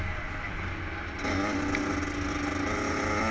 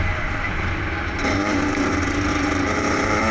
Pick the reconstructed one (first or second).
second